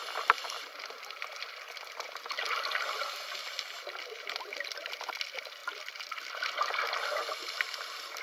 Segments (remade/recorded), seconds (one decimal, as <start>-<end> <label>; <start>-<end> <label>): 0.0-0.8 remade; 0.8-5.6 recorded; 5.6-6.1 remade; 6.1-8.2 recorded